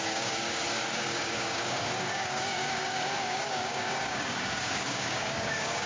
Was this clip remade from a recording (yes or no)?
yes